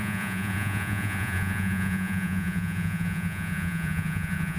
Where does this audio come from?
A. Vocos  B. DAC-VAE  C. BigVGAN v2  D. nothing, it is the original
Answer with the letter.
A